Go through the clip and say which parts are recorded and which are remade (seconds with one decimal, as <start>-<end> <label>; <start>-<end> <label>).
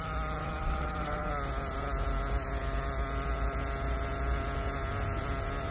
0.0-0.4 recorded; 0.4-1.3 remade; 1.3-5.7 recorded